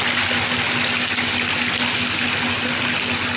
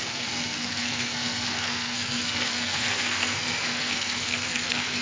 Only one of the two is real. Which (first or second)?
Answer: first